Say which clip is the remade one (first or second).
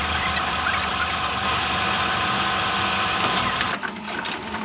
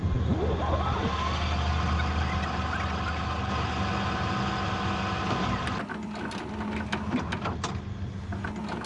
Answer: first